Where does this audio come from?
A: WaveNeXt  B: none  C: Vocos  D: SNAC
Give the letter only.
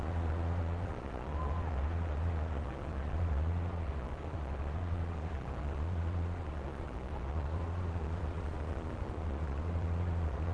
C